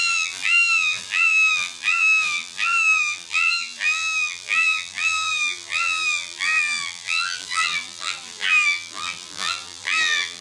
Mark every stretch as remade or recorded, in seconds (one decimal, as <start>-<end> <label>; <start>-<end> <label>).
0.0-10.4 remade